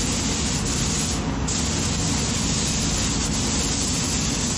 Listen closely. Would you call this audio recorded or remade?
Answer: recorded